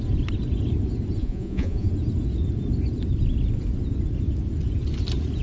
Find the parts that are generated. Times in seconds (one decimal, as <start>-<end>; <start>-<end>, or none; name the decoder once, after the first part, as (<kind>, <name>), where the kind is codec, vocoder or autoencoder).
1.2-1.9 (vocoder, Vocos)